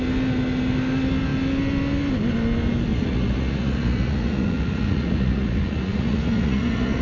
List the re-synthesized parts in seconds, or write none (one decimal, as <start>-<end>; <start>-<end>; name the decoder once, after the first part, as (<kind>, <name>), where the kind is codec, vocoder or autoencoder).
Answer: 2.9-7.0 (vocoder, Vocos)